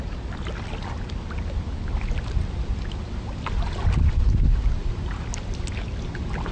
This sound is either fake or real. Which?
real